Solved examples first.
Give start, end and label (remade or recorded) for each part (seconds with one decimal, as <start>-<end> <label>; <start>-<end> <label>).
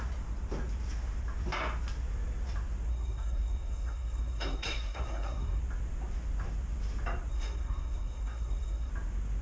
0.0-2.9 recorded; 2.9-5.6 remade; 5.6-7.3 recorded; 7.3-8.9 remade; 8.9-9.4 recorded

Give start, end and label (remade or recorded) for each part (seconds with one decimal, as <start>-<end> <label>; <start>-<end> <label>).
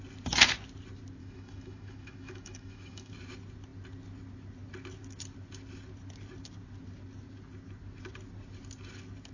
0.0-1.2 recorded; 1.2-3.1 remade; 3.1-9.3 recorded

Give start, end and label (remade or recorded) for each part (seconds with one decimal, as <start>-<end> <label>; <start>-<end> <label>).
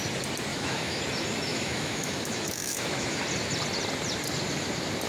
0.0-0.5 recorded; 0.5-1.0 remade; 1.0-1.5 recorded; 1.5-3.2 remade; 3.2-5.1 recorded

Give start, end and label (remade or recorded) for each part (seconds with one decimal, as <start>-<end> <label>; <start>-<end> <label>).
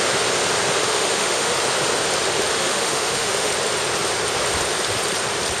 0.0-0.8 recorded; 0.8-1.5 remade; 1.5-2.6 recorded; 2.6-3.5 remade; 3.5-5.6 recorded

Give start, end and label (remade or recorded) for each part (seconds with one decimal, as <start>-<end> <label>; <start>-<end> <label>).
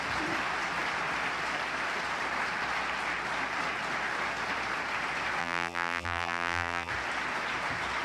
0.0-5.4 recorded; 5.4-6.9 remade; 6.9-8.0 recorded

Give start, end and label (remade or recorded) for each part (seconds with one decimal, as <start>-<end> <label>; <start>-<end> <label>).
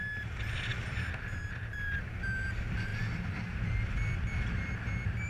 0.0-5.3 recorded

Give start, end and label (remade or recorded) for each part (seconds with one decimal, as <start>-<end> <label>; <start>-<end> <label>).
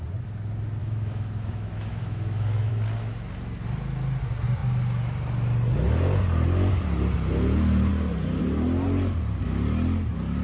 0.0-0.8 recorded; 0.8-2.7 remade; 2.7-10.4 recorded